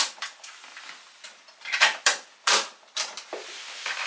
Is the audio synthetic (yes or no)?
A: yes